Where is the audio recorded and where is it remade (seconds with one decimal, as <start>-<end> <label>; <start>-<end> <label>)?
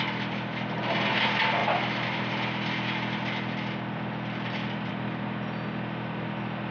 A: 0.0-6.7 recorded